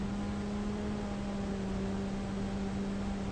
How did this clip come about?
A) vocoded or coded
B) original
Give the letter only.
B